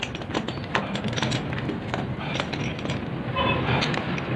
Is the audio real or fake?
real